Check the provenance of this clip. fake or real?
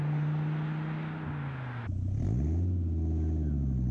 real